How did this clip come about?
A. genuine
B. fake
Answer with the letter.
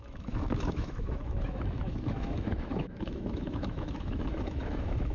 B